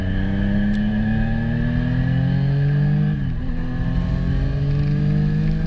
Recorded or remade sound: recorded